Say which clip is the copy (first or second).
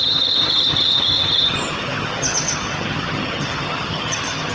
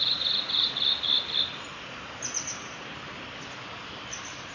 first